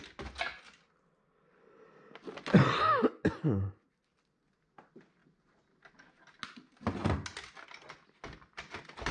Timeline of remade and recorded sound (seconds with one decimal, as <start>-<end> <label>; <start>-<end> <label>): 0.0-9.1 recorded